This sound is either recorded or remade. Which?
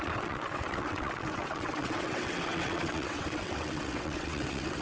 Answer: remade